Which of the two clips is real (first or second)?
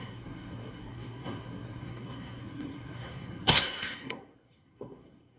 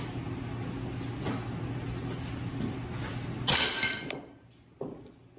second